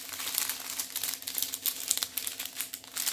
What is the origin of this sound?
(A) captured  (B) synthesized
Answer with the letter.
A